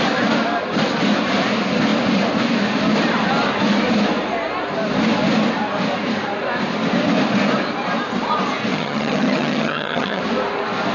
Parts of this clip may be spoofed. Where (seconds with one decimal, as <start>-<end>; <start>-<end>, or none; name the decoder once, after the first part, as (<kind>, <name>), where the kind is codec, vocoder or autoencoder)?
8.7-10.2 (vocoder, HiFi-GAN)